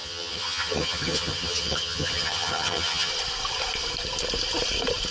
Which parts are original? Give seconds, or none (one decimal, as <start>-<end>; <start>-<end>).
3.1-5.1